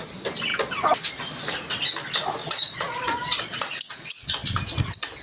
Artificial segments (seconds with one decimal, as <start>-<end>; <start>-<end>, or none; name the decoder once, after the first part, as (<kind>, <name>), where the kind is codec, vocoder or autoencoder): 2.4-4.6 (vocoder, Vocos)